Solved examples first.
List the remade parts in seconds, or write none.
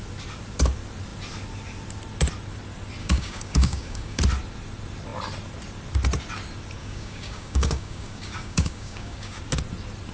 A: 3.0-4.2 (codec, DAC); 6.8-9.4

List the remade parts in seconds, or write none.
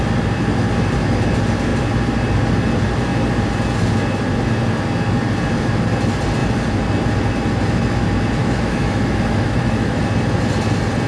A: 8.4-10.0 (autoencoder, DAC-VAE)